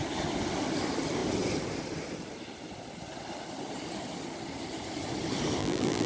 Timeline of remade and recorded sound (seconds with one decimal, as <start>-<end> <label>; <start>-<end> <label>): 0.0-5.6 recorded; 5.6-6.1 remade